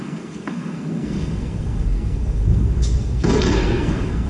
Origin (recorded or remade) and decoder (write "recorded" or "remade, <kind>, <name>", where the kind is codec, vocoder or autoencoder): remade, codec, SNAC